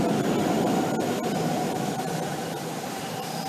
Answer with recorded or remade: recorded